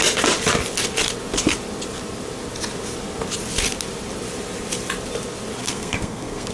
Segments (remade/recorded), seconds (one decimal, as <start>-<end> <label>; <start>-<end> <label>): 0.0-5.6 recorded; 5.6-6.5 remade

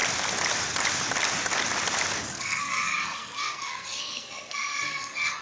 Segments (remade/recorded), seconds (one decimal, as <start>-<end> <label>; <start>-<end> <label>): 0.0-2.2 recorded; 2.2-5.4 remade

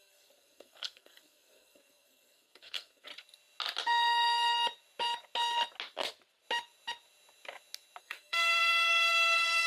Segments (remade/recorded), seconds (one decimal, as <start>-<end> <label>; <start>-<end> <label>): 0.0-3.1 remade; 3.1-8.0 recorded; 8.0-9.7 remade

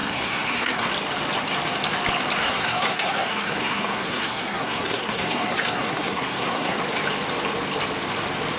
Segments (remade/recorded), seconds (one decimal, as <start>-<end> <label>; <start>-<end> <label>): 0.0-0.9 remade; 0.9-2.4 recorded; 2.4-6.8 remade; 6.8-8.6 recorded

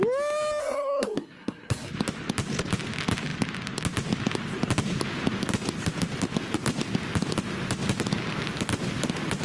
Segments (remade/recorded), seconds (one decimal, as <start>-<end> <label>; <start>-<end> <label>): 0.0-0.6 recorded; 0.6-1.9 remade; 1.9-9.4 recorded

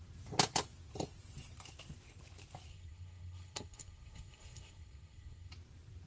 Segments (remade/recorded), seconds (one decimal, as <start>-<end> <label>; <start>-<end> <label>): 0.0-2.7 recorded; 2.7-5.5 remade; 5.5-6.1 recorded